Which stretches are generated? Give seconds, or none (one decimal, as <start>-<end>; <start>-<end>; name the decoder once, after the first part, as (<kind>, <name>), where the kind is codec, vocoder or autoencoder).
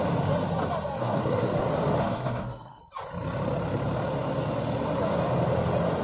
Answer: 1.0-1.5 (codec, SNAC); 2.0-2.8